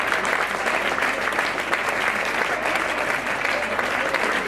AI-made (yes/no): no